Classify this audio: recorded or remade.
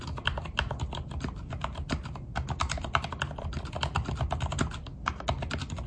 recorded